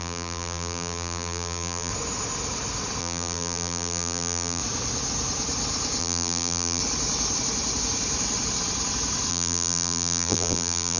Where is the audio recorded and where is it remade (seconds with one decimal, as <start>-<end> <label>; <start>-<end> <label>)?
0.0-1.9 remade; 1.9-3.0 recorded; 3.0-4.6 remade; 4.6-6.0 recorded; 6.0-6.8 remade; 6.8-9.3 recorded; 9.3-11.0 remade